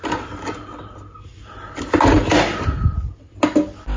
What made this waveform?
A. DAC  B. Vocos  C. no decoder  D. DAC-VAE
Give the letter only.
C